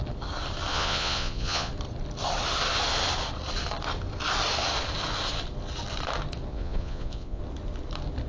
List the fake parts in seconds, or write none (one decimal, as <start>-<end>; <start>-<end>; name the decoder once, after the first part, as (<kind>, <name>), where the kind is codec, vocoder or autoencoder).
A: 0.7-1.7 (vocoder, Vocos); 6.5-7.4